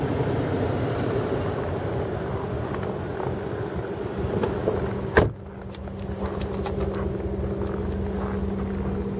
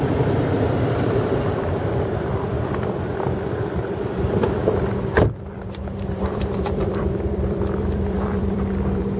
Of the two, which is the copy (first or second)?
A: second